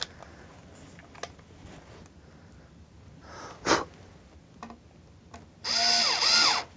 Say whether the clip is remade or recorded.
recorded